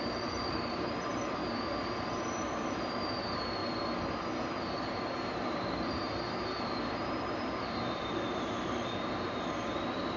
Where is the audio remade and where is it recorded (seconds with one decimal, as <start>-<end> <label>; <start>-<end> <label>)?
0.0-1.4 remade; 1.4-2.5 recorded; 2.5-3.6 remade; 3.6-4.6 recorded; 4.6-10.2 remade